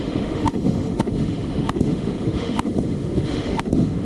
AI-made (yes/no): yes